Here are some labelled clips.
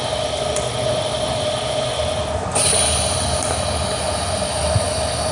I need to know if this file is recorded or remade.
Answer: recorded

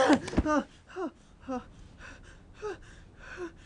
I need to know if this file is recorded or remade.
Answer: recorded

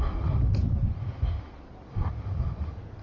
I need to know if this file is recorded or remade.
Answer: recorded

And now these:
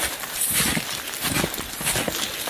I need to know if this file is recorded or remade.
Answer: recorded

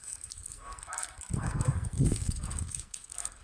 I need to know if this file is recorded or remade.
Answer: remade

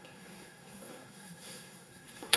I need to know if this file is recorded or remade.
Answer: remade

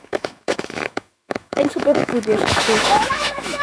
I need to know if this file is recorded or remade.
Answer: remade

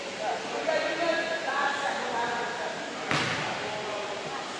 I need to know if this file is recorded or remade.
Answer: recorded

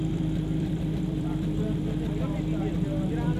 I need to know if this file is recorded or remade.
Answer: remade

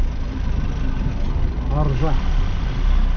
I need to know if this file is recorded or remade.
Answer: recorded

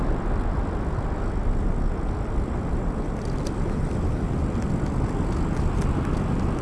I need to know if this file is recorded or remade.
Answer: recorded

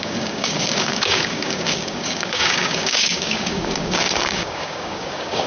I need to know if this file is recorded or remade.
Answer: remade